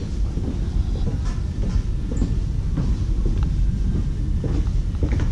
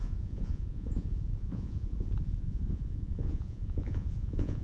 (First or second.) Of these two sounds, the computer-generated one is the second